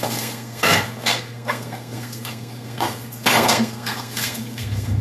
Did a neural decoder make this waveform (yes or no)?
yes